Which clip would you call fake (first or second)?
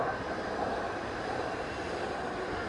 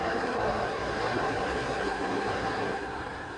second